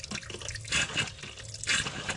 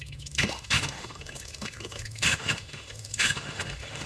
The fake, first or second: second